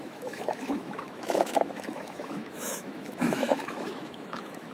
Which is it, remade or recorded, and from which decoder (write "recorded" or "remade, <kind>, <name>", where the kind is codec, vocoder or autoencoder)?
remade, autoencoder, DAC-VAE